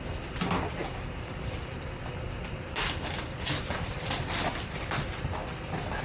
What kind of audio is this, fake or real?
real